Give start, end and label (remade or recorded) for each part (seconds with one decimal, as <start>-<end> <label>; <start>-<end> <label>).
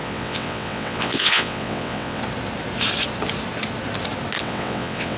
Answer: 0.0-2.2 remade; 2.2-4.4 recorded; 4.4-5.2 remade